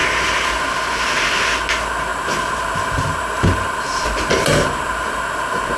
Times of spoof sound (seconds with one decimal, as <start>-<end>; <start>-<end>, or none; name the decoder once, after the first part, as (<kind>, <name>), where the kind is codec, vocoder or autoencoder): 0.0-0.7 (vocoder, BigVGAN v2); 2.1-5.2